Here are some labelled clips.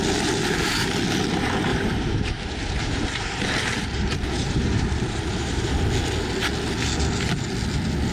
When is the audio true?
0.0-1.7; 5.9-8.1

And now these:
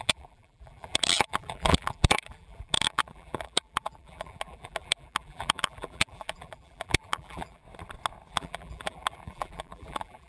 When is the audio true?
7.6-8.3

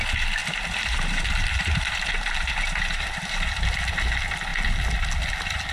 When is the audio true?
0.0-0.4; 3.7-5.7

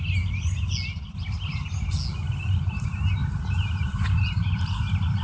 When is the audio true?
0.0-3.2; 4.8-5.2

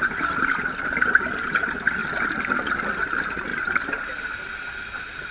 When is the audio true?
2.0-3.0

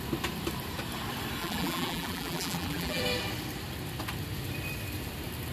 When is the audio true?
0.0-1.4; 3.0-5.5

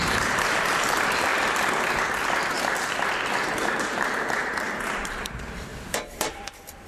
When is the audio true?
1.3-3.8; 5.7-6.9

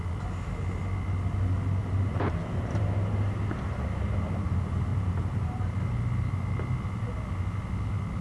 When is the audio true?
0.0-1.8; 2.9-4.9; 5.7-8.2